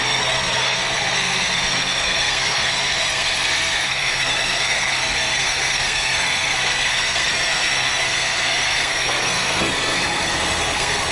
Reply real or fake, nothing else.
fake